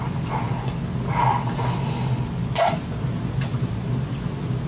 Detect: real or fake real